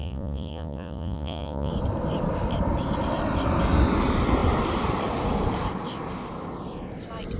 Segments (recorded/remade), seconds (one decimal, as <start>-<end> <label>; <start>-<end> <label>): 0.0-1.7 remade; 1.7-7.4 recorded